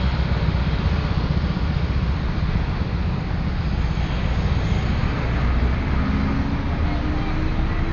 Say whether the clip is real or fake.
real